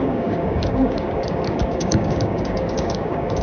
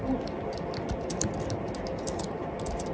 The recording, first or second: second